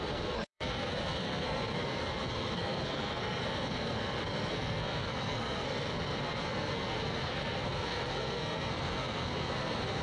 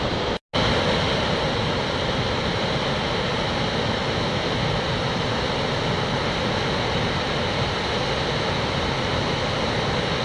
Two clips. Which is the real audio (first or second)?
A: second